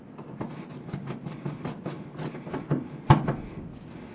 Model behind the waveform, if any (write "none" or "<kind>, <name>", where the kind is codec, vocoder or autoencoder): none